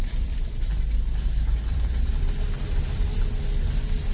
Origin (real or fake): real